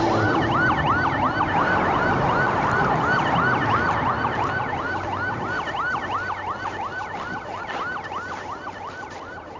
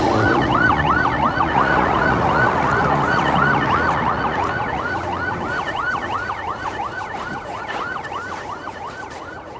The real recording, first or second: first